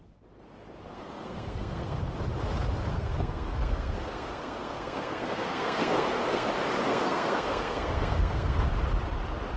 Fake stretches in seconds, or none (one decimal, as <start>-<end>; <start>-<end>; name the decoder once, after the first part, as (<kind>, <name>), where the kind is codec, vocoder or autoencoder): 0.9-2.0 (codec, SNAC); 2.9-6.5; 6.9-8.7